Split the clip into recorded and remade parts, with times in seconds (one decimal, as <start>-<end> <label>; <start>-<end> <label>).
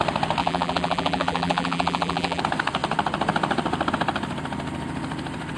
0.0-0.4 recorded; 0.4-2.4 remade; 2.4-5.6 recorded